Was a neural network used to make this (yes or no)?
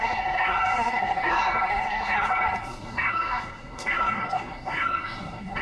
yes